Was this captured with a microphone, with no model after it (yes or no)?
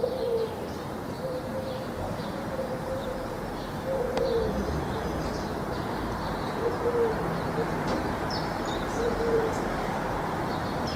no